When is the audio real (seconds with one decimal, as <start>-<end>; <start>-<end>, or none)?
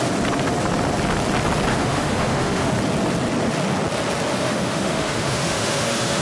0.0-1.7; 2.7-4.3